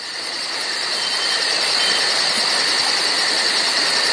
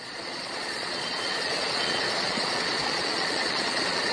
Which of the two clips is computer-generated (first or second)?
second